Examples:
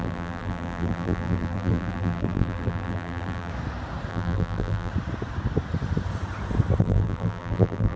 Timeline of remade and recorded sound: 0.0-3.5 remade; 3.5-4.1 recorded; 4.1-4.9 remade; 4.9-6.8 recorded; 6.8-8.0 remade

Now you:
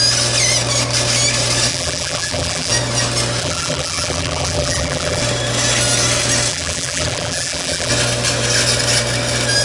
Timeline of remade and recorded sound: 0.0-1.7 recorded; 1.7-2.7 remade; 2.7-3.4 recorded; 3.4-5.2 remade; 5.2-6.5 recorded; 6.5-7.9 remade; 7.9-9.6 recorded

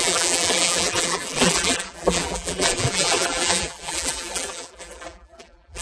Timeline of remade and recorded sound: 0.0-5.8 remade

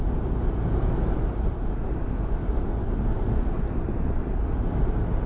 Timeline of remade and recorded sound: 0.0-5.3 recorded

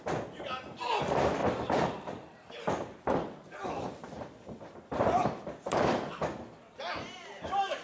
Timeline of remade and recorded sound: 0.0-7.8 recorded

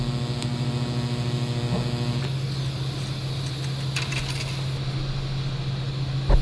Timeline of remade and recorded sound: 0.0-6.4 recorded

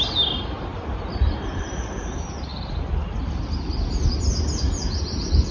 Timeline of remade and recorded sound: 0.0-5.5 recorded

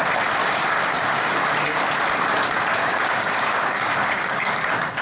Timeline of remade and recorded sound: 0.0-0.4 recorded; 0.4-1.3 remade; 1.3-2.8 recorded; 2.8-4.5 remade; 4.5-5.0 recorded